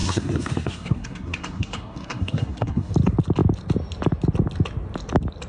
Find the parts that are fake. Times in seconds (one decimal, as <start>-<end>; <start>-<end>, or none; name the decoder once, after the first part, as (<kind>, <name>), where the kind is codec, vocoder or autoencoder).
0.0-2.9 (codec, SNAC)